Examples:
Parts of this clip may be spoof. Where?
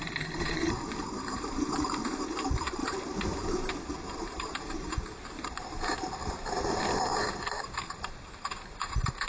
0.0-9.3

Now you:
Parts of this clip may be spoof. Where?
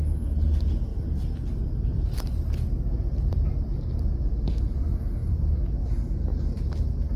0.9-4.8; 5.2-5.8